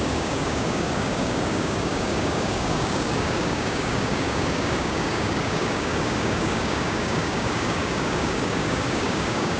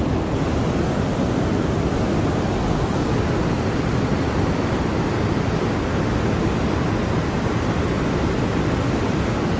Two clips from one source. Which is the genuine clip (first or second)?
second